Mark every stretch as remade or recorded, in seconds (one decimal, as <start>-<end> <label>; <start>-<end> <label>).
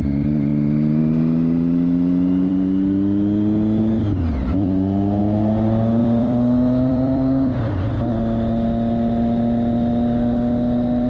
0.0-6.0 recorded; 6.0-7.7 remade; 7.7-11.1 recorded